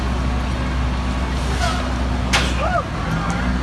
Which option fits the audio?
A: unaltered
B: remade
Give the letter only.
A